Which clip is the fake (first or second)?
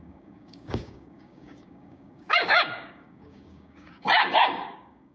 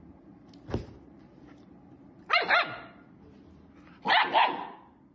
first